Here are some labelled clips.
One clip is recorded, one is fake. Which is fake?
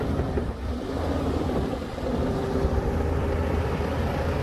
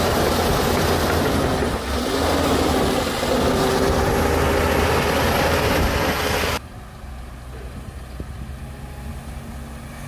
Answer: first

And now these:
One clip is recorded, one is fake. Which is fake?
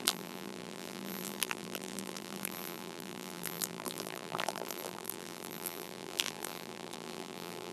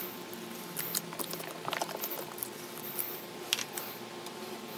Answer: first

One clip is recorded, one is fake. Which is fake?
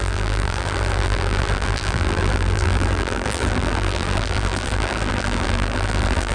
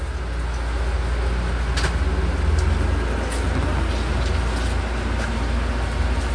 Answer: first